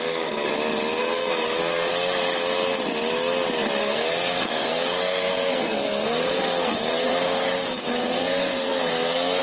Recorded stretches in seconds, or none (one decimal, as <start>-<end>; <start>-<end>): 0.5-1.0; 1.9-3.8